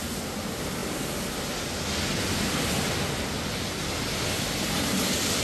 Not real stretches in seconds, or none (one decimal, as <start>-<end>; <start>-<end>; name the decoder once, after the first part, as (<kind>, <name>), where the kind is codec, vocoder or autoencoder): none